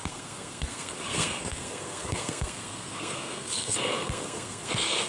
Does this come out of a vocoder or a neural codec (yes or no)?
yes